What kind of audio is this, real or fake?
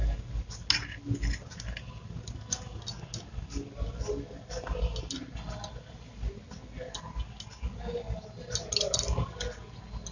real